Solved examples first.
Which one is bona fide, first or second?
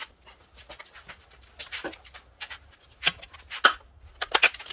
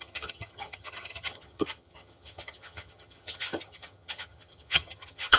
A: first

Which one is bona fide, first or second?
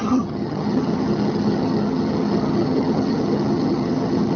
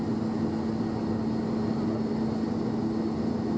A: second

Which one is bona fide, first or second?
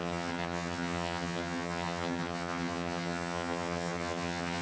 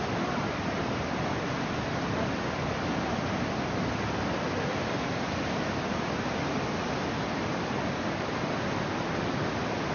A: second